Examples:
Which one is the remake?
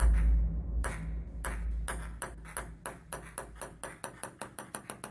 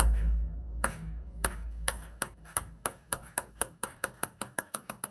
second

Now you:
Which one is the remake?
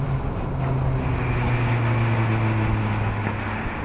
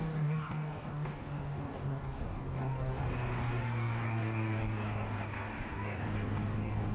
second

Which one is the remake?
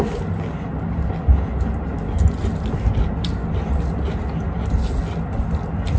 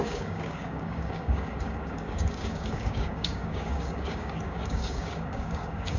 second